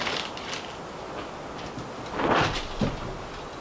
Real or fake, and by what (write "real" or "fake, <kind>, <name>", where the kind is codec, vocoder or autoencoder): real